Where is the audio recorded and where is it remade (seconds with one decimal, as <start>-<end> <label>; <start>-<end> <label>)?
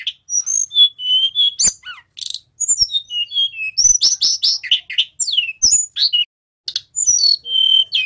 0.0-8.1 recorded